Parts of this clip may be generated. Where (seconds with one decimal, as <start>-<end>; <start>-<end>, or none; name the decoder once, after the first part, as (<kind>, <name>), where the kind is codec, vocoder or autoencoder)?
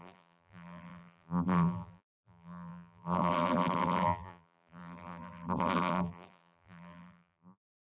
0.0-8.0 (vocoder, BigVGAN v2)